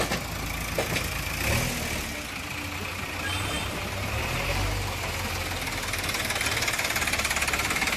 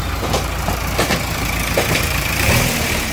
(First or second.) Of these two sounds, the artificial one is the second